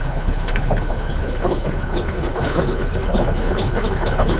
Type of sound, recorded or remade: remade